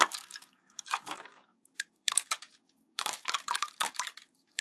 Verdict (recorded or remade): remade